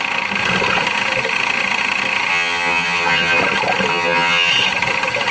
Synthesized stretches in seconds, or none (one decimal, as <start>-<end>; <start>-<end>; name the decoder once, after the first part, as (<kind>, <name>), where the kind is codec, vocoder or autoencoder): 2.3-3.4 (vocoder, HiFi-GAN); 3.9-4.5